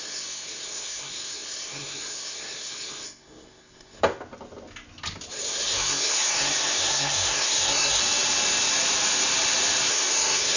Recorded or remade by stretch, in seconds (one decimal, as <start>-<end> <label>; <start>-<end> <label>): 0.0-4.0 remade; 4.0-5.3 recorded; 5.3-8.0 remade; 8.0-9.9 recorded; 9.9-10.6 remade